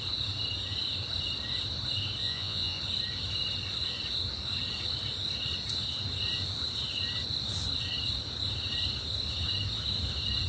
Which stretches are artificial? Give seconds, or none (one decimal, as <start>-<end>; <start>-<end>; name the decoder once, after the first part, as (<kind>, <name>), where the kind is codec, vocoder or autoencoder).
2.2-2.8 (vocoder, Vocos)